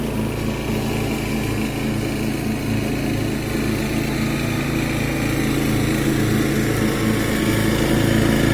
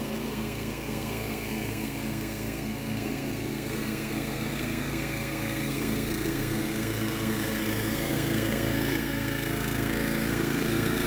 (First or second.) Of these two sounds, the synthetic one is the second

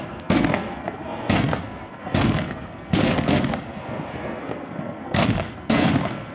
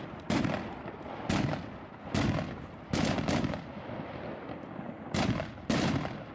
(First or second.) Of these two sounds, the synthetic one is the first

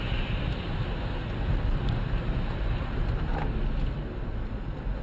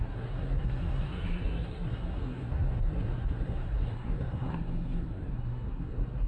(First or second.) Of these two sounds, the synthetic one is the second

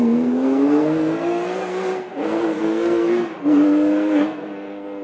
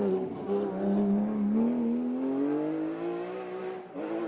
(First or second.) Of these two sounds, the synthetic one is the first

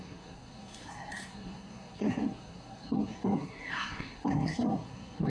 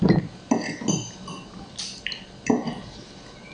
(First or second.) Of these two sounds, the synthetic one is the first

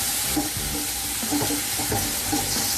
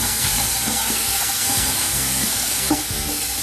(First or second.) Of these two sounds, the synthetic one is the second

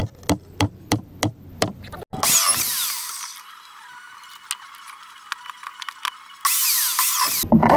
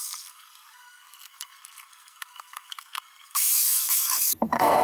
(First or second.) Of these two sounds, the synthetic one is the second